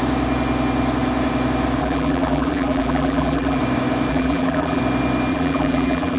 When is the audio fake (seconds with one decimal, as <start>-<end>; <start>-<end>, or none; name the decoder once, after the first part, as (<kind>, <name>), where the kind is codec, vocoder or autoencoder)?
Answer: 1.8-3.6 (vocoder, BigVGAN v2); 4.1-4.8; 5.3-6.2